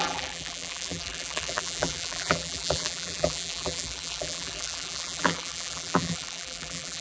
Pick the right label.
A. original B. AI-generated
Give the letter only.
B